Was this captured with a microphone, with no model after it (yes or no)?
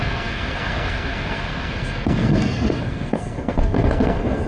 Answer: no